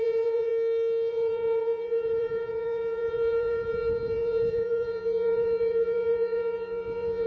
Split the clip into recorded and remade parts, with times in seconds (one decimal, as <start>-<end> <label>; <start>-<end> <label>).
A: 0.0-0.5 remade; 0.5-1.1 recorded; 1.1-7.3 remade